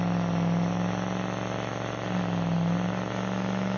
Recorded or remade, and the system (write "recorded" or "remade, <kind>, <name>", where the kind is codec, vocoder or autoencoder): recorded